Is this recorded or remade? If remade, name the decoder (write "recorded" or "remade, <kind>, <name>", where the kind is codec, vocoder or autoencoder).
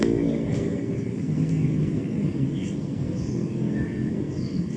remade, codec, SNAC